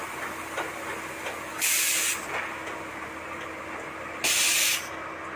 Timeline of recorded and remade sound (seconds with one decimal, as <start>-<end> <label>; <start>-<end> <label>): 0.0-1.5 recorded; 1.5-4.7 remade; 4.7-5.4 recorded